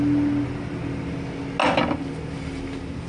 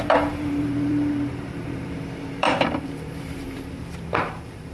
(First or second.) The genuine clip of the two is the first